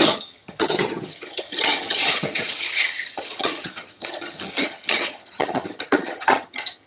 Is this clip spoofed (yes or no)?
yes